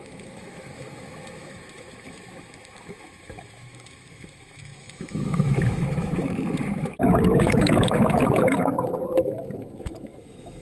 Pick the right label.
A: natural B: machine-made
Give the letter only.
B